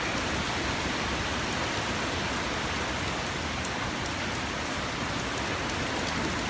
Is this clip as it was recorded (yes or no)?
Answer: yes